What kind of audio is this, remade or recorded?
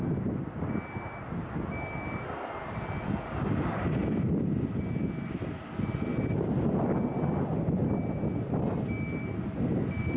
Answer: recorded